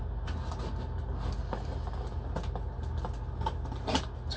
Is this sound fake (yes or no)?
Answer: no